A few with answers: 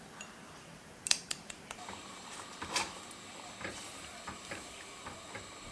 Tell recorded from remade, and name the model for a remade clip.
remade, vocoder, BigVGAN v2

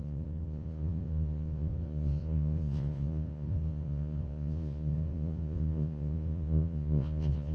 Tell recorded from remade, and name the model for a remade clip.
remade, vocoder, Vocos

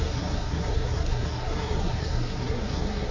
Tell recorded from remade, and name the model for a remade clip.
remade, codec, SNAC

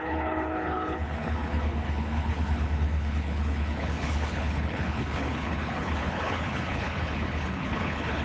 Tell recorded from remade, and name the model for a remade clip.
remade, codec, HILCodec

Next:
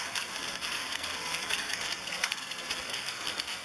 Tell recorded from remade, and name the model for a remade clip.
remade, codec, SNAC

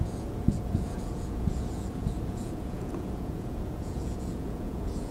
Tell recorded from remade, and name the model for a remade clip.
remade, vocoder, Vocos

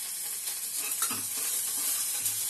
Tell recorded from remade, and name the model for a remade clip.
recorded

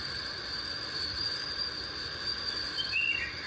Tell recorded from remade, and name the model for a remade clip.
recorded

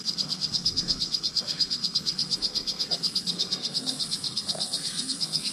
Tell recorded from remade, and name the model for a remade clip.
remade, codec, SNAC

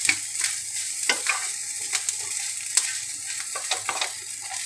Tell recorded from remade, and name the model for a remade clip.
recorded